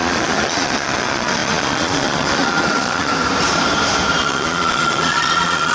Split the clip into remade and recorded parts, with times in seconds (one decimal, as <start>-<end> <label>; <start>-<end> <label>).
0.0-3.1 remade; 3.1-4.2 recorded; 4.2-5.7 remade

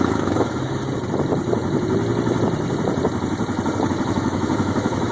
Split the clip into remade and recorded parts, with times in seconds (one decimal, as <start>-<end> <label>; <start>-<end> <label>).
0.0-0.8 remade; 0.8-3.9 recorded; 3.9-5.1 remade

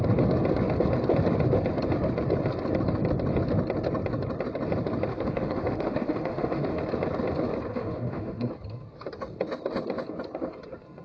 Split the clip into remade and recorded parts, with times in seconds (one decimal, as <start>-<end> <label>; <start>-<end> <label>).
0.0-5.1 recorded; 5.1-6.8 remade; 6.8-7.7 recorded; 7.7-8.5 remade; 8.5-11.0 recorded

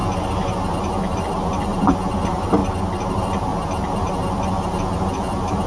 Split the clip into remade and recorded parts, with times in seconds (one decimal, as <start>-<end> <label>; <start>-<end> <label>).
0.0-1.0 recorded; 1.0-2.6 remade; 2.6-3.1 recorded; 3.1-3.5 remade; 3.5-5.3 recorded; 5.3-5.7 remade

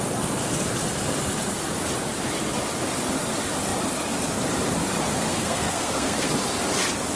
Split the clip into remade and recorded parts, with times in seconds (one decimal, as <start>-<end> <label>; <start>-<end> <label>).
0.0-5.3 recorded; 5.3-6.3 remade; 6.3-7.2 recorded

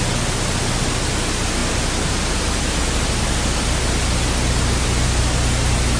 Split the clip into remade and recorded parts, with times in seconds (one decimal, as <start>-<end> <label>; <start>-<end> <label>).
0.0-6.0 recorded

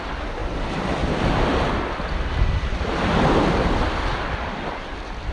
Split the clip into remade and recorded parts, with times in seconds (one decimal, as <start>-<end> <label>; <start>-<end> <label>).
0.0-5.3 recorded

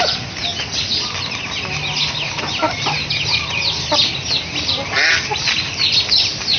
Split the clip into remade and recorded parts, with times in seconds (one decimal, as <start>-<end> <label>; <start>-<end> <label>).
0.0-6.6 recorded